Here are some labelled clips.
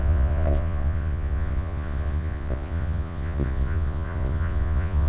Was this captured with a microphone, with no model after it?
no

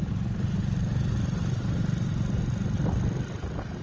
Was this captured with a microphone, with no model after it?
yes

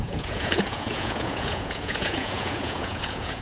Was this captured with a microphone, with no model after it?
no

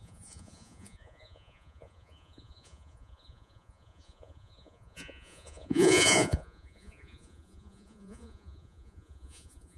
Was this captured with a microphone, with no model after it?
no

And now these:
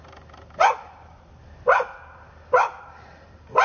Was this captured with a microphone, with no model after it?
yes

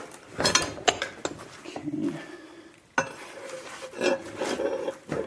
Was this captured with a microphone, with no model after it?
yes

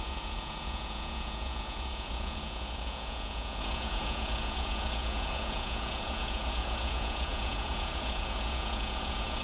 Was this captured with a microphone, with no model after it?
no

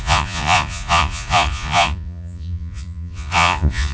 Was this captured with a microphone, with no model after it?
no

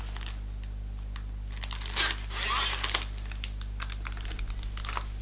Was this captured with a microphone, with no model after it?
yes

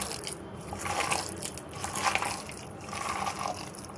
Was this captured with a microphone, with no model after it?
yes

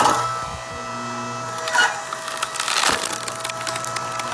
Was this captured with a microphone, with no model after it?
yes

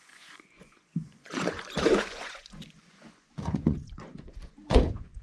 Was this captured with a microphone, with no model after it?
no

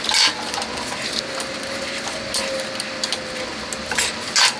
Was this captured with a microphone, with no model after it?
yes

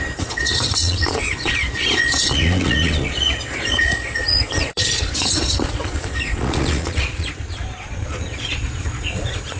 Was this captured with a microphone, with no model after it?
no